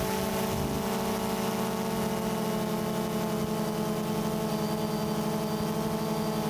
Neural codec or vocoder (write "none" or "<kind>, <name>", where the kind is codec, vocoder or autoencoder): none